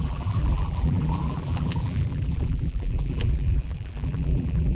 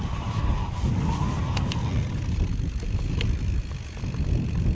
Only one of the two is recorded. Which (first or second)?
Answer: second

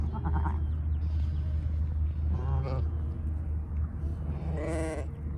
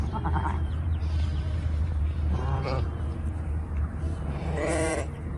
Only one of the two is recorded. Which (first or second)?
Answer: first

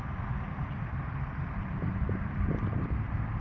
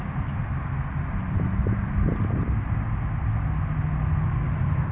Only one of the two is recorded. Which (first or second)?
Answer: second